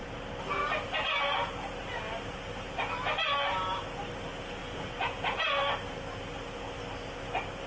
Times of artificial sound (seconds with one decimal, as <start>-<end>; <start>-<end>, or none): 4.6-5.6